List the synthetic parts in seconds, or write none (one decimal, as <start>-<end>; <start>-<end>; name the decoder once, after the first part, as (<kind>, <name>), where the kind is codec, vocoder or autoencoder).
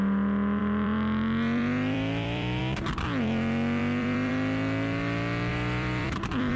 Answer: 0.6-2.6 (vocoder, BigVGAN v2); 3.8-4.3; 5.5-6.6